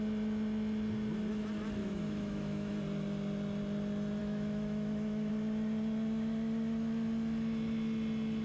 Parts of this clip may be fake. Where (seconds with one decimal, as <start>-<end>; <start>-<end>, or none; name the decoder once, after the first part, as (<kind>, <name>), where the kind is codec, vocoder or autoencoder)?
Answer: 1.8-2.7 (autoencoder, DAC-VAE); 4.2-5.3